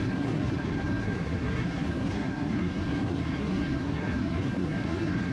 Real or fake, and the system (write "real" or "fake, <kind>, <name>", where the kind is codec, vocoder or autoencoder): fake, codec, SNAC